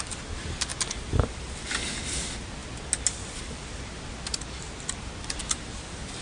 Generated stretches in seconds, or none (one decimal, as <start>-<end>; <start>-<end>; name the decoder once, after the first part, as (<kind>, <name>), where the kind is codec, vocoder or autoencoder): none